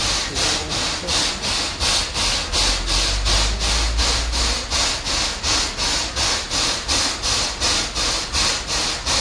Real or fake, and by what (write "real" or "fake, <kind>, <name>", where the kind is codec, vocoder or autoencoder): real